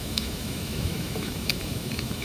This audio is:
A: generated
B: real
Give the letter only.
A